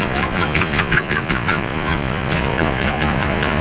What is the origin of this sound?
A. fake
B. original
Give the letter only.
A